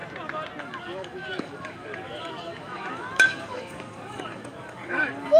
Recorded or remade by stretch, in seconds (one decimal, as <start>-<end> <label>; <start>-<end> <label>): 0.0-0.6 recorded; 0.6-5.4 remade